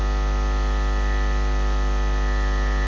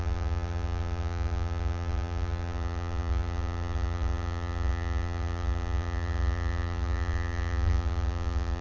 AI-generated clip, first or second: second